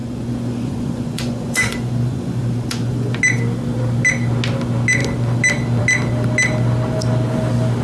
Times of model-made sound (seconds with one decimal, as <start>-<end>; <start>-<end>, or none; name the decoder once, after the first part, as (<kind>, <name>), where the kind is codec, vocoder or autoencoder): 0.0-3.2 (vocoder, Vocos)

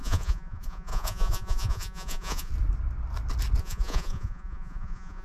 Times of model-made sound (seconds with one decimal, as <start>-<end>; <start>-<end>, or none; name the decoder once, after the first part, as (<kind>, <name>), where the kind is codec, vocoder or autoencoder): 0.0-2.5 (vocoder, Vocos); 3.6-5.2

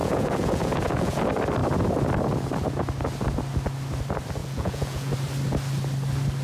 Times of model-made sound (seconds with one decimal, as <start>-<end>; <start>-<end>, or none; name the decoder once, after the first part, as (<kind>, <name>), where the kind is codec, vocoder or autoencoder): 0.0-1.2 (vocoder, Vocos); 4.4-5.1

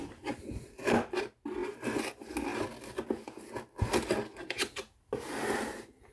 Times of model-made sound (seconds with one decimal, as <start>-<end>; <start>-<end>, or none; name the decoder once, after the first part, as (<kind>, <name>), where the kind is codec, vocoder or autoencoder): none

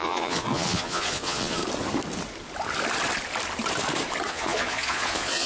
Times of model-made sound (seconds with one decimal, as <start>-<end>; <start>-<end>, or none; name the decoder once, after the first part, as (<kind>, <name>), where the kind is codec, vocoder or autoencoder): 0.0-1.6 (vocoder, Vocos); 4.3-5.5

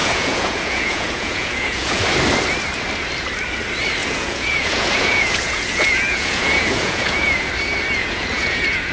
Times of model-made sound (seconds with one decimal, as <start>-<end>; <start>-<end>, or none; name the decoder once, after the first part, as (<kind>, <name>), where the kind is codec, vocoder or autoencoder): 0.0-2.0 (vocoder, Vocos); 4.0-7.5; 8.0-8.9

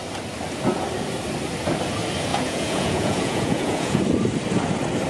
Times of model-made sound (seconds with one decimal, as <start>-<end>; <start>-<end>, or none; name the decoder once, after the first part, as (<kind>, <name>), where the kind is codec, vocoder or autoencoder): 2.3-4.0 (vocoder, Vocos)